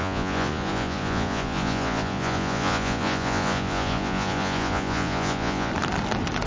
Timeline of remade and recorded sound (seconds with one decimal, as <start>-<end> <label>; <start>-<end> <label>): 0.0-5.7 remade; 5.7-6.5 recorded